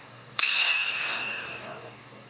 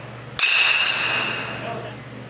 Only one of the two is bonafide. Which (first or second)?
second